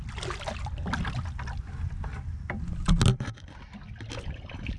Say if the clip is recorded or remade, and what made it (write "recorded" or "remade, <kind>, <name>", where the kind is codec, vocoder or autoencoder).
recorded